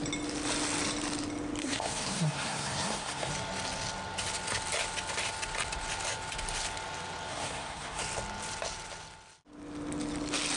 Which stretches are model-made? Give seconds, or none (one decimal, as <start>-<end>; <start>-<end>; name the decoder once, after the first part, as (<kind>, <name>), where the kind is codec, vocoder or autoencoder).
1.6-3.3 (codec, SNAC); 7.3-8.0